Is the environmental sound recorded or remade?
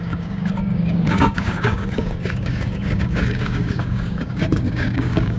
remade